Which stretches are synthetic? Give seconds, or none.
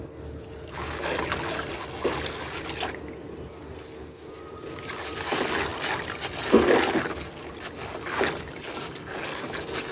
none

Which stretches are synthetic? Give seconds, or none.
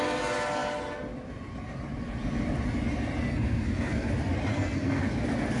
3.3-4.1; 4.5-5.0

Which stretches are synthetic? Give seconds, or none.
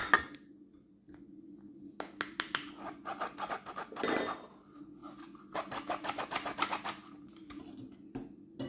none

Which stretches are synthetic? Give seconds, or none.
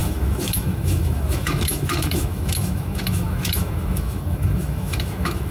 0.0-5.5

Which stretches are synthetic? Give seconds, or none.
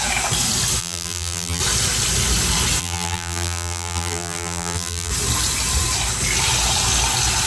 0.8-1.6; 2.8-5.1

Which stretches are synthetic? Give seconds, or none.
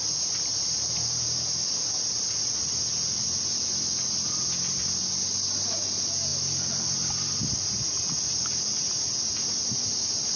none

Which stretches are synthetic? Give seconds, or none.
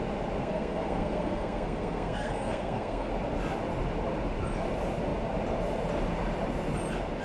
0.4-3.1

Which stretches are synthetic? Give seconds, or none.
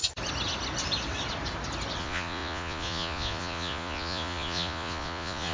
2.0-5.5